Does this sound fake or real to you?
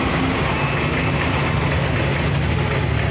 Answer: real